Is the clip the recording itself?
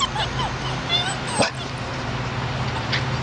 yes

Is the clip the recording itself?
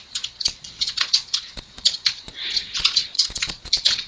no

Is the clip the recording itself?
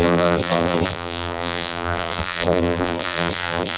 no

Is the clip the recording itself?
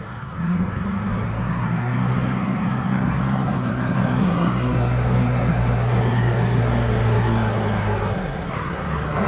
no